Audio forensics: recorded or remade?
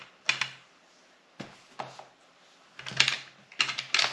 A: recorded